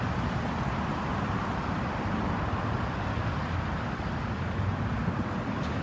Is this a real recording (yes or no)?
no